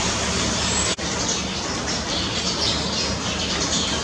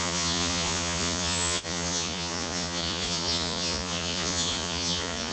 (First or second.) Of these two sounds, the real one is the first